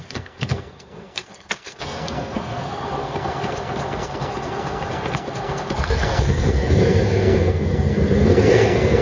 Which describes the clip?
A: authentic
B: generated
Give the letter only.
B